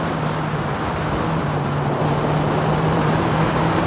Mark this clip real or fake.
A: real